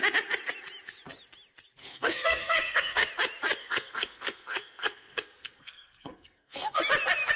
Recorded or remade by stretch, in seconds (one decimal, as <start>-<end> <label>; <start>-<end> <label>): 0.0-1.8 recorded; 1.8-3.1 remade; 3.1-3.6 recorded; 3.6-6.8 remade; 6.8-7.4 recorded